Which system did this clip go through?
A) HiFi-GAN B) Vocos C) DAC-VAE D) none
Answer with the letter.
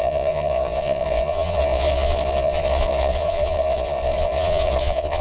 B